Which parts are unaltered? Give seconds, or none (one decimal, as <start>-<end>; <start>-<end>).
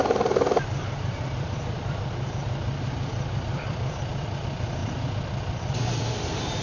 0.0-1.1